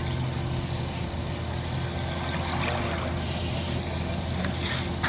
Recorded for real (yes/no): yes